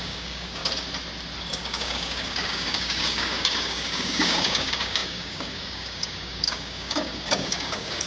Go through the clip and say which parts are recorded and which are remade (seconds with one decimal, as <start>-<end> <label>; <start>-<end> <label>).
0.0-0.6 remade; 0.6-1.5 recorded; 1.5-8.1 remade